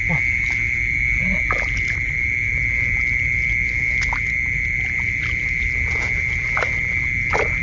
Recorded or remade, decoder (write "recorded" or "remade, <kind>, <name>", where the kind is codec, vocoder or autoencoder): recorded